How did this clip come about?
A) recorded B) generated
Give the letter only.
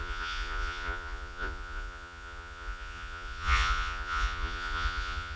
B